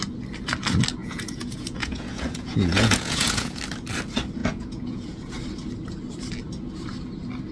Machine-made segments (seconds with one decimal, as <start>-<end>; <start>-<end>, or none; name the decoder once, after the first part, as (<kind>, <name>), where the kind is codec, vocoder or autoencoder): 1.0-3.6 (vocoder, Vocos); 4.4-5.3